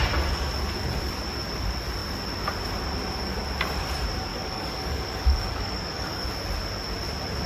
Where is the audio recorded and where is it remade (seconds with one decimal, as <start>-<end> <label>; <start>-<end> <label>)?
0.0-4.3 recorded; 4.3-6.3 remade; 6.3-7.5 recorded